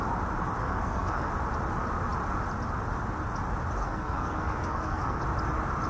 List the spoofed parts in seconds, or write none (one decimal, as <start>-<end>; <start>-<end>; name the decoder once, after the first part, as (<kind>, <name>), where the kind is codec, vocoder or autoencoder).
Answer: 0.6-1.3 (codec, SNAC); 3.8-5.2

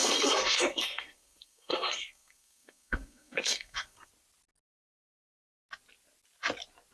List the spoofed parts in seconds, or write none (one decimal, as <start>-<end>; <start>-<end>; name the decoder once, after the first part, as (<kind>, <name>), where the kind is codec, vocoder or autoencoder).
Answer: 0.0-4.1 (codec, SNAC)